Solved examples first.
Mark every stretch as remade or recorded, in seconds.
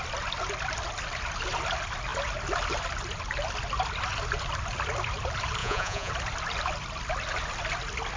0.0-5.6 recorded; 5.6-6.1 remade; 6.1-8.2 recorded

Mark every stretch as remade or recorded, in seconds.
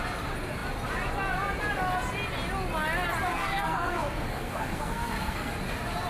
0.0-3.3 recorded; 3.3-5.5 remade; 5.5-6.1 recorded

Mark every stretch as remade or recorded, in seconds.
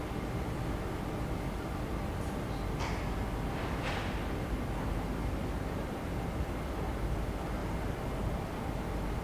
0.0-9.2 recorded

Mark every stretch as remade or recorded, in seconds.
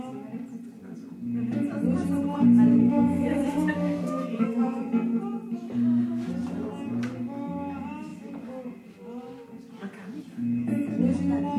0.0-2.8 recorded; 2.8-4.8 remade; 4.8-11.6 recorded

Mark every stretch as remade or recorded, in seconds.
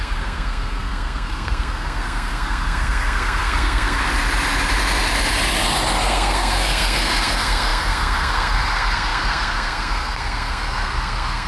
0.0-4.0 remade; 4.0-6.0 recorded; 6.0-11.5 remade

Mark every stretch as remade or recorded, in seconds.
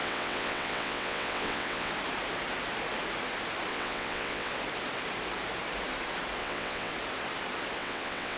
0.0-1.9 remade; 1.9-3.7 recorded; 3.7-4.5 remade; 4.5-6.4 recorded; 6.4-6.9 remade; 6.9-7.8 recorded; 7.8-8.4 remade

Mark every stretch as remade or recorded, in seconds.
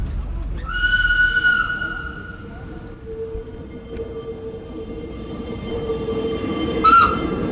0.0-4.5 recorded; 4.5-5.9 remade; 5.9-6.9 recorded; 6.9-7.5 remade